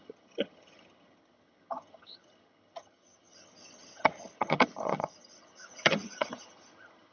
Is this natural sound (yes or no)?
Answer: no